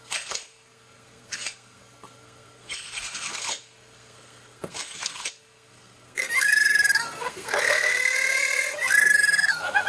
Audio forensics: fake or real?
fake